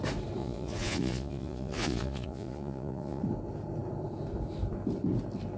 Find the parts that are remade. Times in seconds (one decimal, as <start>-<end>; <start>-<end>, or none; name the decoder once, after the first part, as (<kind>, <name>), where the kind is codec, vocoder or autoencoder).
0.4-3.2 (vocoder, Vocos)